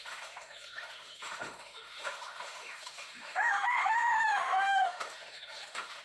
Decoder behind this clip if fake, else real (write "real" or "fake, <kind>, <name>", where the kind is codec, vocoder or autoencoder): fake, autoencoder, DAC-VAE